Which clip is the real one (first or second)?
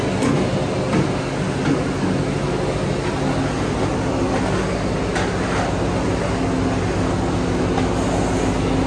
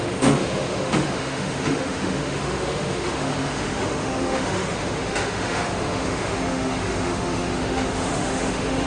first